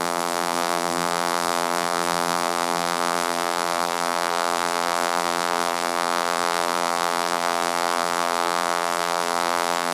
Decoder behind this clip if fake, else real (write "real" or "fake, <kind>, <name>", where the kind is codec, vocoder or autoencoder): fake, vocoder, BigVGAN v2